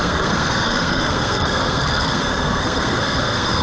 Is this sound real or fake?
fake